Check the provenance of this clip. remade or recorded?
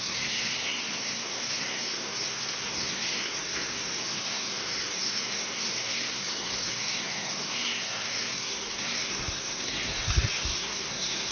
remade